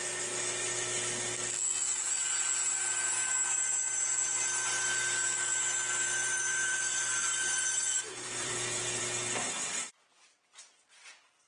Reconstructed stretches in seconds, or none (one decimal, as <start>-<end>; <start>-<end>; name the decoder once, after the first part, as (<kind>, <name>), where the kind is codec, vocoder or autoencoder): 5.5-9.0 (vocoder, BigVGAN v2)